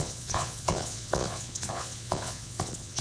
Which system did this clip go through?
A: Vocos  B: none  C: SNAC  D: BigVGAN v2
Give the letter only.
A